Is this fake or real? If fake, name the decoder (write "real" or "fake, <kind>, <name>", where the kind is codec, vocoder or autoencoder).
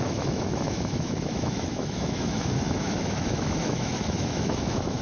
fake, autoencoder, DAC-VAE